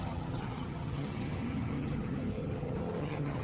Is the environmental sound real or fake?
fake